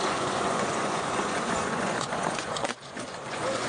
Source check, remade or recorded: remade